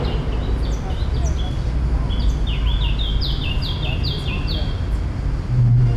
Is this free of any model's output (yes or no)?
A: yes